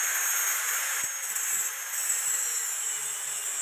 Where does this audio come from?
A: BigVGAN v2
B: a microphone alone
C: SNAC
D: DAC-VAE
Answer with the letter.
A